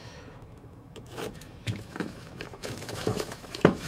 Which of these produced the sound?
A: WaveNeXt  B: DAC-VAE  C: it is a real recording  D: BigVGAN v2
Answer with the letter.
B